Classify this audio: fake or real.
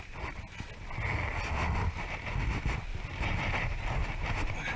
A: real